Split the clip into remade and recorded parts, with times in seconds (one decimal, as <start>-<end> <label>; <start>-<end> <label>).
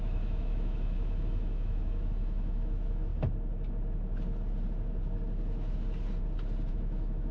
0.0-3.1 remade; 3.1-6.7 recorded; 6.7-7.3 remade